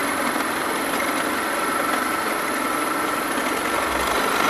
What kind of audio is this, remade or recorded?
recorded